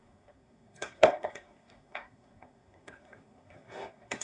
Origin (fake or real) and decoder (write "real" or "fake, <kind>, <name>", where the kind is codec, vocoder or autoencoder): fake, codec, SNAC